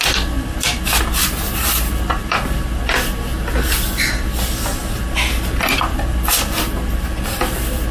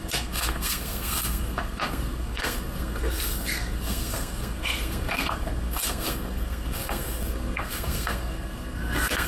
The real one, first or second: first